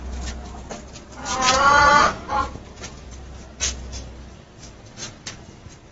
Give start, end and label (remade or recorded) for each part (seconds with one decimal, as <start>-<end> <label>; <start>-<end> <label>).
0.0-1.9 recorded; 1.9-3.1 remade; 3.1-5.9 recorded